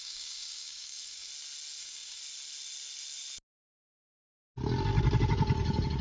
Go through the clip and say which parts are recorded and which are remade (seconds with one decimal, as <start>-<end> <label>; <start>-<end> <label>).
0.0-1.3 remade; 1.3-1.8 recorded; 1.8-2.2 remade; 2.2-6.0 recorded